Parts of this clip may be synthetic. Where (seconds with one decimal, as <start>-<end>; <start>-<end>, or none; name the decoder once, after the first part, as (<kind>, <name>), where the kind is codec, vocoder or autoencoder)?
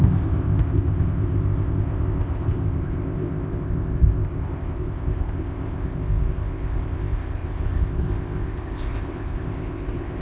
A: 0.0-10.2 (codec, ZipCodec)